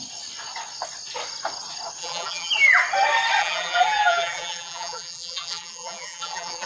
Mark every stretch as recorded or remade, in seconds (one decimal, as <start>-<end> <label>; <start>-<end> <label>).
0.0-2.0 recorded; 2.0-2.5 remade; 2.5-3.4 recorded; 3.4-6.7 remade